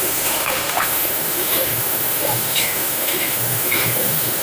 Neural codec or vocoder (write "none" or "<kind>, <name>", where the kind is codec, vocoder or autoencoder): autoencoder, DAC-VAE